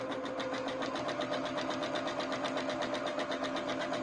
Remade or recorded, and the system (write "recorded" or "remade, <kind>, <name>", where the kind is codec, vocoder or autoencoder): recorded